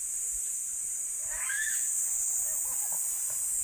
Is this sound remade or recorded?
recorded